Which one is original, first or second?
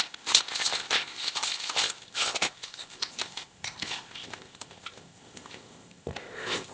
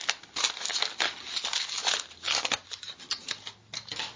second